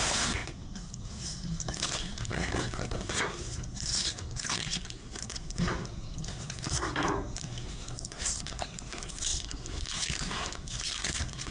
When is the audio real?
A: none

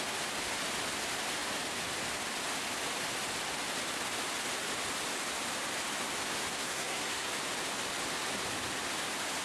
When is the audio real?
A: 0.0-6.5; 7.3-9.4

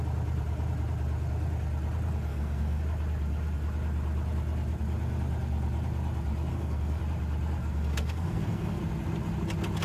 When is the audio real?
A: 0.0-2.3; 2.8-6.5; 7.0-7.6; 8.8-9.8

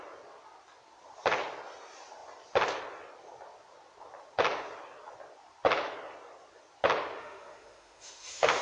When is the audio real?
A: 0.0-7.2

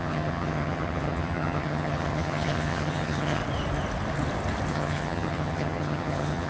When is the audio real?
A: 3.4-4.7

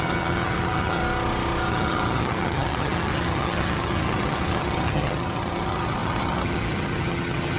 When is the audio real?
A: 1.0-1.7

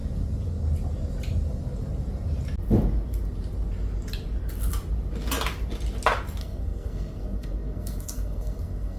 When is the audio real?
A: 0.0-6.4

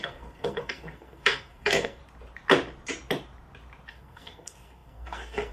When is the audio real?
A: 2.0-3.9